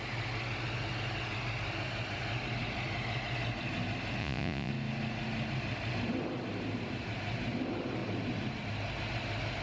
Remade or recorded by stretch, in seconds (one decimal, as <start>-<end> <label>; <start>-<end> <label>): 0.0-4.2 recorded; 4.2-4.7 remade; 4.7-9.6 recorded